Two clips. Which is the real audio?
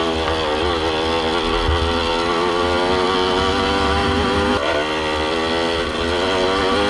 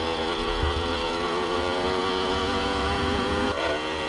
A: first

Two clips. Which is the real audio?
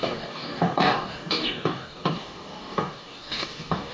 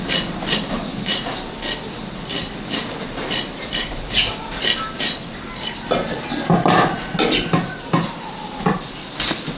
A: second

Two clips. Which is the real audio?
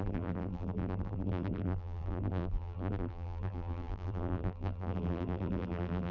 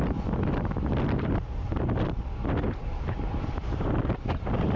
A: second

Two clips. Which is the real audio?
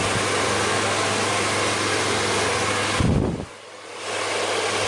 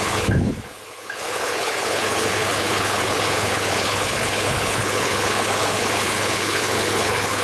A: first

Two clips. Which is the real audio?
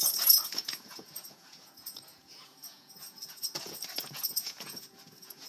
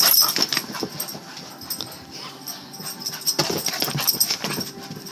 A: second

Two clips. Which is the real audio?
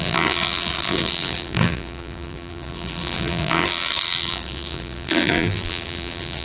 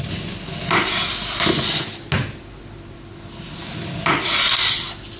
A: second